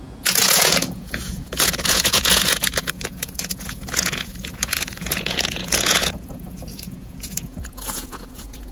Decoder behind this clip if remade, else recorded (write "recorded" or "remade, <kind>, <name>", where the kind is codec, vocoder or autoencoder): remade, vocoder, Vocos